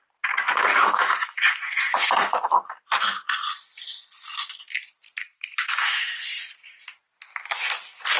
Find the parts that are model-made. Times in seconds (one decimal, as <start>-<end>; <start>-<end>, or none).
0.7-2.5; 5.2-6.1